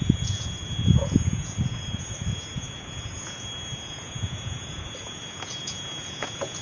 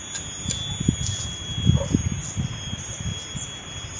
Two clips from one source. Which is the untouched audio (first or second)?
second